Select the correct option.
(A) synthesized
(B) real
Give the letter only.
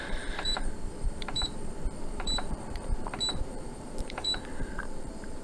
A